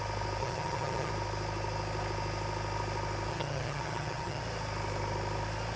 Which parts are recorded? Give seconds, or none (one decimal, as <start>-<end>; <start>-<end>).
0.0-0.4; 1.1-3.3; 4.4-5.8